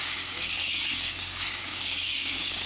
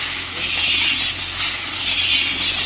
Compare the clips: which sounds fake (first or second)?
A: first